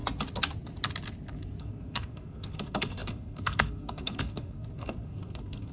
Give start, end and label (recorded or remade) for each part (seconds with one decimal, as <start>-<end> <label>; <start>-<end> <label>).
0.0-1.6 recorded; 1.6-5.7 remade